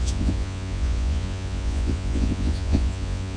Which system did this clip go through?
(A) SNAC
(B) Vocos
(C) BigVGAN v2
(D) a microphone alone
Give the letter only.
B